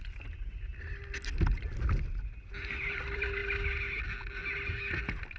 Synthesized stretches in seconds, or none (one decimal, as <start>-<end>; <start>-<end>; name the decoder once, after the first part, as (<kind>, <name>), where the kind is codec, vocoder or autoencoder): 0.0-0.7 (vocoder, BigVGAN v2); 2.0-3.4; 4.0-4.4; 5.0-5.4

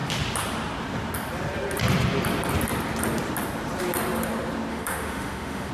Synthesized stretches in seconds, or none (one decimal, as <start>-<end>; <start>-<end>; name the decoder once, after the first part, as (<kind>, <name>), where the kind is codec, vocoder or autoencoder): 4.7-5.7 (autoencoder, DAC-VAE)

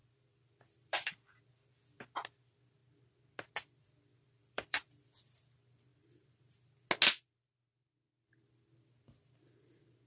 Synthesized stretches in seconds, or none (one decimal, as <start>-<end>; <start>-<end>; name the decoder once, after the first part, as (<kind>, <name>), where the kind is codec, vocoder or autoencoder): 0.0-1.4 (vocoder, BigVGAN v2); 4.4-5.0; 5.9-6.4

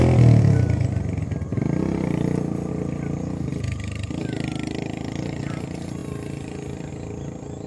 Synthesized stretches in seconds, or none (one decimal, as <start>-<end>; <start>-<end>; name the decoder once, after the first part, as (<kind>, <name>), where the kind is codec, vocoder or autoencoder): none

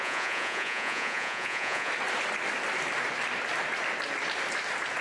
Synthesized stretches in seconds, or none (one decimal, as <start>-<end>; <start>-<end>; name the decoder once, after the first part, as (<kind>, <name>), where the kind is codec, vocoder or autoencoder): 0.0-1.9 (vocoder, Vocos)

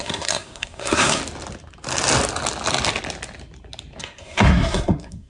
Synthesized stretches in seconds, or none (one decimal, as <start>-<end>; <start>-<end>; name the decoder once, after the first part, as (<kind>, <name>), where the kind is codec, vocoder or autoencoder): 0.0-1.2 (codec, SNAC); 4.0-5.3

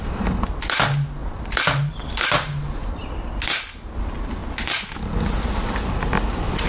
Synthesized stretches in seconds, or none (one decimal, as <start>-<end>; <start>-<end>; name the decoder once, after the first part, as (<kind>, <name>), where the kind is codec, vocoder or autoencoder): none

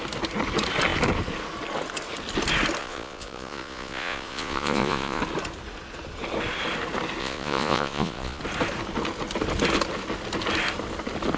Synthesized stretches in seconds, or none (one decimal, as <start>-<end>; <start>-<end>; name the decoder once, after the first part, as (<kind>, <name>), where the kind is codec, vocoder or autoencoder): 2.8-5.2 (vocoder, Vocos); 7.2-8.4